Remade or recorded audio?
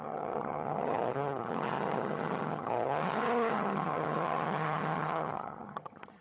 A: remade